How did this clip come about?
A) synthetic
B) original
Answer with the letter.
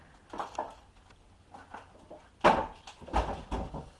B